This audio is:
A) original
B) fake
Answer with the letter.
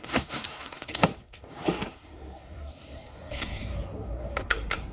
B